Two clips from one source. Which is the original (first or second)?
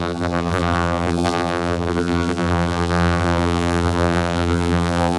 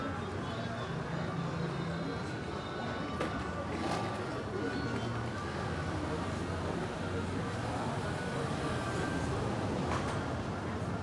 second